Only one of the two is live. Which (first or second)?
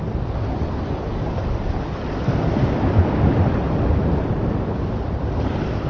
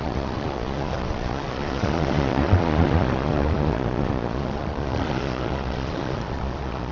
first